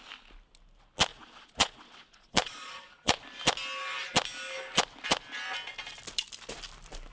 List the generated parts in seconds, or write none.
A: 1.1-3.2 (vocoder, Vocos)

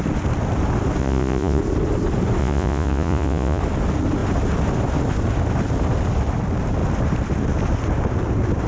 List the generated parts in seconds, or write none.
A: 1.0-1.6 (vocoder, Vocos); 2.4-3.6